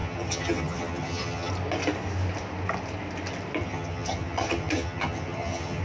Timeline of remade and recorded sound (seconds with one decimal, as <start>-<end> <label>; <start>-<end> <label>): 0.0-1.5 remade; 1.5-3.6 recorded; 3.6-5.8 remade